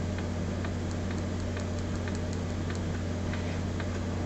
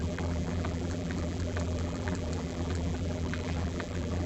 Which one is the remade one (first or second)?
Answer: second